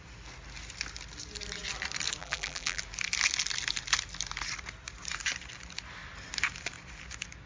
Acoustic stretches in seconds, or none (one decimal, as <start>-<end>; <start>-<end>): 0.0-2.2; 2.8-7.5